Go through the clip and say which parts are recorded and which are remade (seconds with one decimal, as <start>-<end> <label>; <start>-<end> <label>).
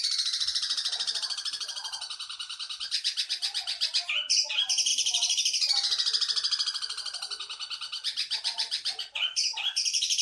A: 0.0-10.2 recorded